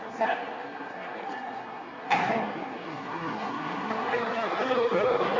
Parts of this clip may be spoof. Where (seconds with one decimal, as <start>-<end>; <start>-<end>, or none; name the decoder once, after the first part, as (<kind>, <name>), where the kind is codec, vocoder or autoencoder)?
0.0-5.4 (codec, SNAC)